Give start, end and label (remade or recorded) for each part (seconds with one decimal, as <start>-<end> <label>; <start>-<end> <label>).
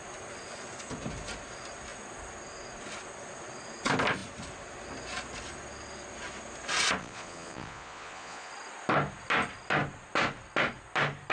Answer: 0.0-7.0 recorded; 7.0-8.5 remade; 8.5-11.3 recorded